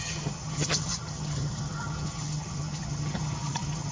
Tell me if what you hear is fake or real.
fake